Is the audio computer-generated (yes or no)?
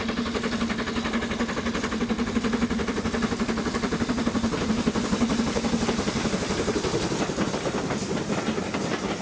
no